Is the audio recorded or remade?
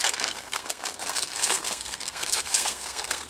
remade